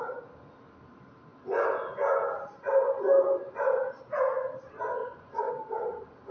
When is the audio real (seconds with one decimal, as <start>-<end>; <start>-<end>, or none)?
0.0-5.0; 5.5-6.3